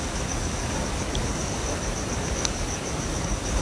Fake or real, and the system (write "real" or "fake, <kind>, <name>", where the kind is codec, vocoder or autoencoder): fake, codec, DAC